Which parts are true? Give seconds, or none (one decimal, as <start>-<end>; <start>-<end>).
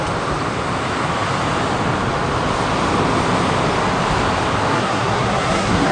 0.0-4.7